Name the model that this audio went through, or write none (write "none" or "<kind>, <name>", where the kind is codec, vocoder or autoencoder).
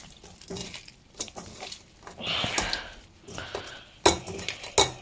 none